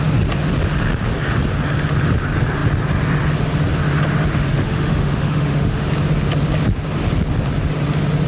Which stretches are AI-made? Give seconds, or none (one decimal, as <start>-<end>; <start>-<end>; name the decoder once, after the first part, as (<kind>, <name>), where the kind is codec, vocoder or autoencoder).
4.3-5.9 (autoencoder, DAC-VAE)